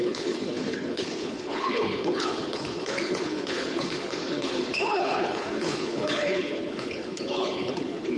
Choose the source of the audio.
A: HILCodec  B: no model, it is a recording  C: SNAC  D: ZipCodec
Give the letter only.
A